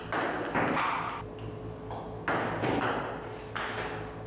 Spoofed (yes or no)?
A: no